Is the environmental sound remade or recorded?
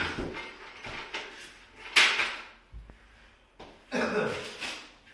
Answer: recorded